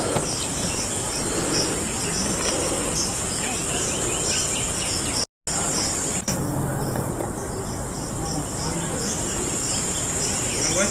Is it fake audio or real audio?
real